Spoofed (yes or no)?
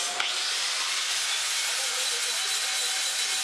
no